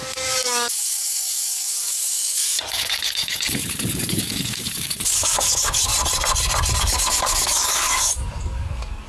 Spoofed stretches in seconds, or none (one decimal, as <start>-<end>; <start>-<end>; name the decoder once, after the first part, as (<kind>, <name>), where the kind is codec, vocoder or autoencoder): 0.0-5.9 (codec, DAC); 6.8-9.1